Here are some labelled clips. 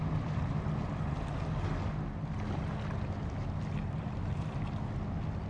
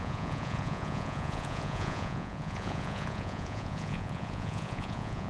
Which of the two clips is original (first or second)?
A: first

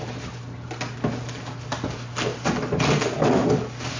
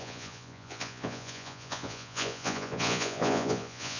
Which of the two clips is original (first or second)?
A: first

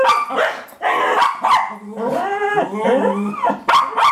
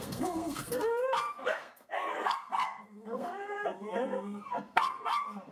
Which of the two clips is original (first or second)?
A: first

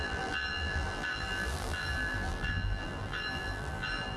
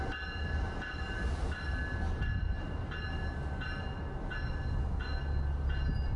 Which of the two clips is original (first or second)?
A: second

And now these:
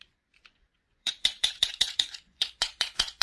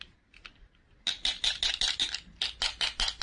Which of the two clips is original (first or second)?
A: second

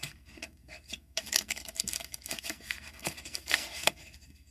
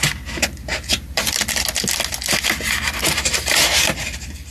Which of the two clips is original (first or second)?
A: second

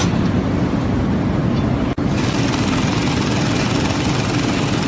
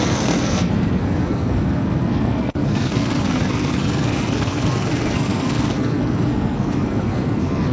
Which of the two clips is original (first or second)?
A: first